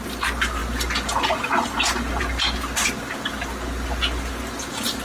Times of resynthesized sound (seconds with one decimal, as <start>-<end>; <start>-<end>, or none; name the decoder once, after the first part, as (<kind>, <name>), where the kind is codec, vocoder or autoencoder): none